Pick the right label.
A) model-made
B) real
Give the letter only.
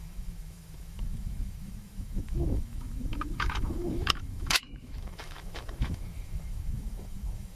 A